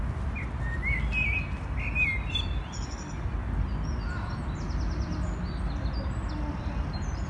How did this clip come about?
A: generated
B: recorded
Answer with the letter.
B